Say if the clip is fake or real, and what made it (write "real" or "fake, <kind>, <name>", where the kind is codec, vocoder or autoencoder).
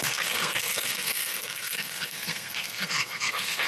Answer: fake, codec, SNAC